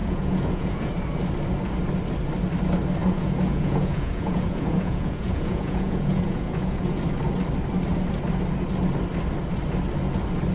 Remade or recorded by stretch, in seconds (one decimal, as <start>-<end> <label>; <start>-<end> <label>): 0.0-0.9 remade; 0.9-3.0 recorded; 3.0-7.0 remade; 7.0-10.5 recorded